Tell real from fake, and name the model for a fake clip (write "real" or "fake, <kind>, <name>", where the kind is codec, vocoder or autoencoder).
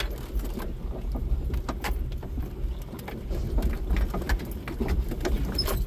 real